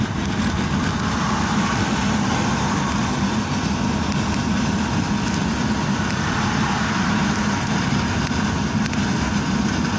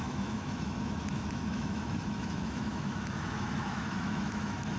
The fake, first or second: second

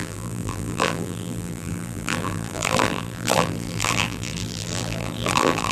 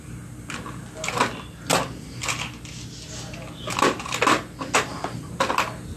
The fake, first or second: first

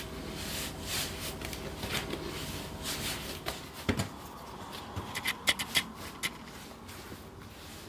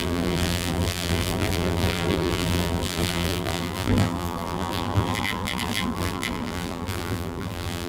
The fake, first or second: second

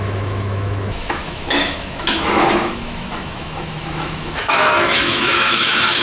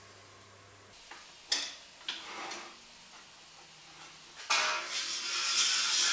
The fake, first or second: first